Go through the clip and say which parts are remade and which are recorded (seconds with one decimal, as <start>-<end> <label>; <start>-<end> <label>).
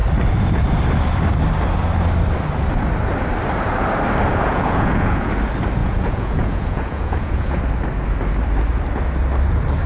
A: 0.0-4.3 recorded; 4.3-5.3 remade; 5.3-5.8 recorded; 5.8-7.6 remade; 7.6-9.9 recorded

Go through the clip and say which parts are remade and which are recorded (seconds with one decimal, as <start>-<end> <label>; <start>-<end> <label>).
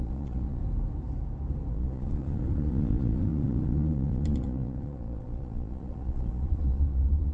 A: 0.0-0.6 remade; 0.6-1.7 recorded; 1.7-7.3 remade